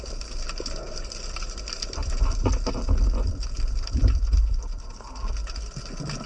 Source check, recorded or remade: recorded